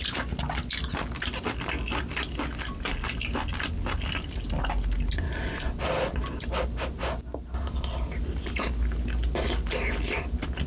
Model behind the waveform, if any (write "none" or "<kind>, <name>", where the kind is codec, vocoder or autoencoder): none